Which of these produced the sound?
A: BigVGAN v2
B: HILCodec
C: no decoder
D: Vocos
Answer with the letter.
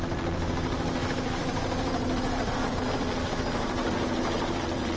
A